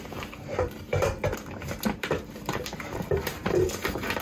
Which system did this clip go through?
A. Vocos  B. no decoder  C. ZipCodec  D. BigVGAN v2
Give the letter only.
D